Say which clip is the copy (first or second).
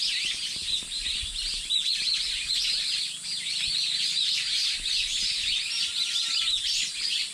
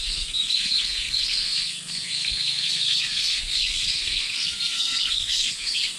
second